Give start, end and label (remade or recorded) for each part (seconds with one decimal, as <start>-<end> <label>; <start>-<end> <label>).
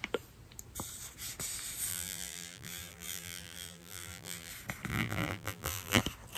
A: 0.0-1.9 recorded; 1.9-4.5 remade; 4.5-4.9 recorded; 4.9-6.0 remade; 6.0-6.4 recorded